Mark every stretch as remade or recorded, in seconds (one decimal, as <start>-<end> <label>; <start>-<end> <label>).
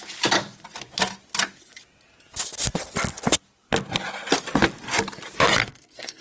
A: 0.0-5.6 recorded; 5.6-6.2 remade